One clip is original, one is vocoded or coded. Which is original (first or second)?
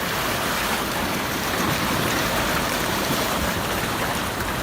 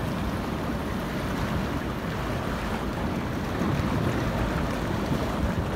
second